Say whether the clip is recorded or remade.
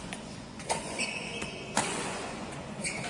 remade